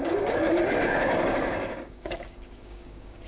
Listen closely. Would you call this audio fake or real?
fake